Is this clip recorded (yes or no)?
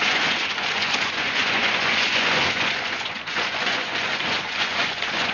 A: no